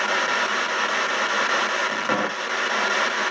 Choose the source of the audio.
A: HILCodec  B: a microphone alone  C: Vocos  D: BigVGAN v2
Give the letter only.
B